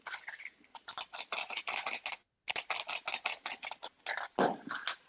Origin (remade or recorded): recorded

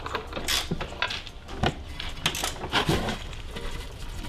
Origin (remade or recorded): recorded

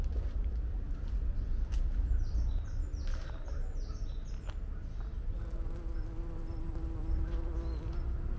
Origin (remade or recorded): recorded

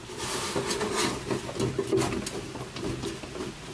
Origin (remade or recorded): recorded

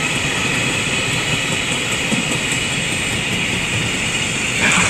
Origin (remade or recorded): remade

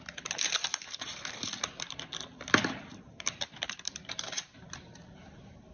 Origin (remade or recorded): remade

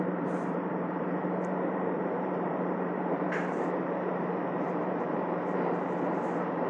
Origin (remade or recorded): remade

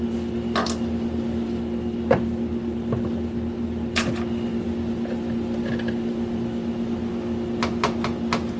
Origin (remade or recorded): recorded